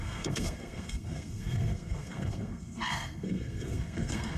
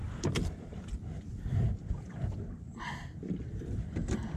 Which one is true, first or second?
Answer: second